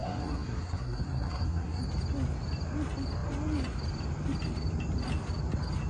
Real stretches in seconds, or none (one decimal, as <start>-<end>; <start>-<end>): 1.8-5.9